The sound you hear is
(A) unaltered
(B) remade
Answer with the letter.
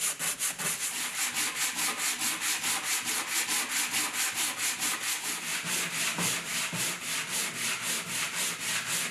A